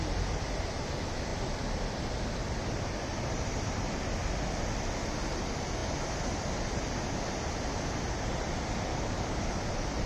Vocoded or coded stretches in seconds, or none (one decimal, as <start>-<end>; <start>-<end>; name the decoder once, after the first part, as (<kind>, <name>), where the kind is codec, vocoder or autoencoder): 8.9-9.5 (codec, DAC)